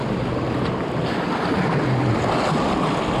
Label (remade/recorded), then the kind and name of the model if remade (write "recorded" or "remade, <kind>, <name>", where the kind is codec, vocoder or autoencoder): recorded